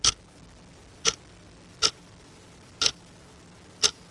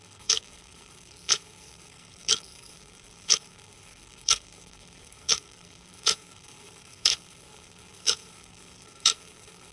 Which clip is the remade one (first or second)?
second